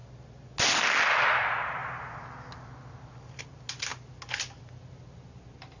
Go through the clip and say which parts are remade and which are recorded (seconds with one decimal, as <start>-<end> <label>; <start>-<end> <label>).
0.0-5.8 recorded